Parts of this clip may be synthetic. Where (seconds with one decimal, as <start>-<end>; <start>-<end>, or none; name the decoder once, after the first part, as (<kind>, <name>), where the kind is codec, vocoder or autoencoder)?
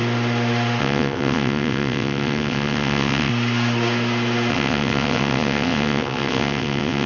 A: 0.8-3.3 (vocoder, WaveNeXt); 4.5-7.1